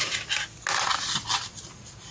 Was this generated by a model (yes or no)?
no